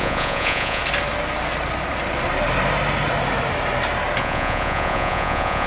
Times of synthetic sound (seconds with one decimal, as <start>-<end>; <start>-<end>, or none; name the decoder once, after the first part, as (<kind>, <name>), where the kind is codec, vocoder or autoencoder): 0.0-0.8 (vocoder, Vocos); 4.2-5.7